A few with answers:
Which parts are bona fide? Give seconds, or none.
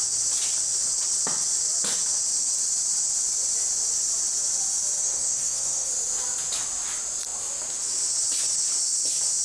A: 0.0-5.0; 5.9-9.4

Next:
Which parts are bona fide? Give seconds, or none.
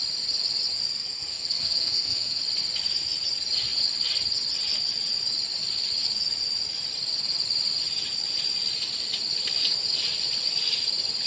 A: 0.0-1.0; 2.4-11.3